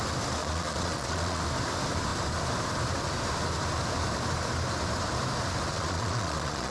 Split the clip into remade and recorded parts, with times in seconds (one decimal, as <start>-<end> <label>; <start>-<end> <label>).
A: 0.0-0.4 recorded; 0.4-1.4 remade; 1.4-5.7 recorded; 5.7-6.7 remade